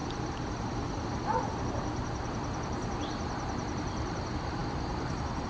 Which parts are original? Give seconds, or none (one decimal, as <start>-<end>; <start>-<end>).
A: 0.0-5.5